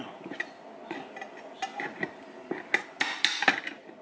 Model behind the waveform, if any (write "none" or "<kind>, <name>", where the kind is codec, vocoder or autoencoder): none